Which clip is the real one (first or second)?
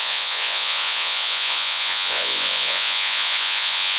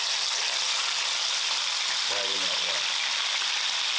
second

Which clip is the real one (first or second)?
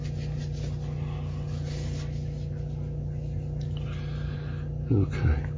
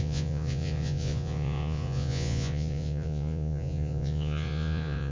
first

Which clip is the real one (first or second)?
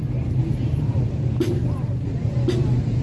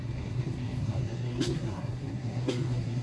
first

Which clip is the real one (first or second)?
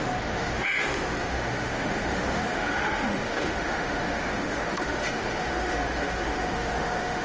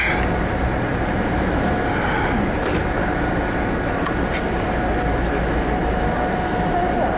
second